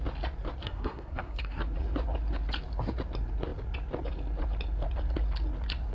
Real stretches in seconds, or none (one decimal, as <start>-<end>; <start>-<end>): 0.0-0.6; 1.6-5.9